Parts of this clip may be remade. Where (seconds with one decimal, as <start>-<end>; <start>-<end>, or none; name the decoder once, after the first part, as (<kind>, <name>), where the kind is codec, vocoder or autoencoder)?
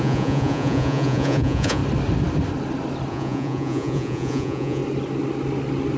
0.0-1.8 (vocoder, Vocos); 3.1-4.8